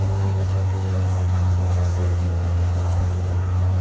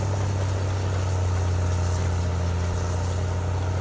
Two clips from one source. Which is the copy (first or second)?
first